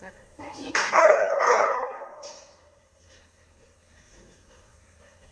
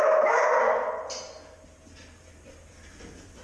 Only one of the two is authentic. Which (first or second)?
second